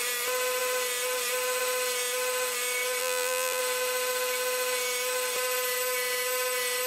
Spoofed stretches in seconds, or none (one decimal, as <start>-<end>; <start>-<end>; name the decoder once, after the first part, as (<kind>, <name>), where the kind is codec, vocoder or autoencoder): 3.0-3.6 (vocoder, BigVGAN v2)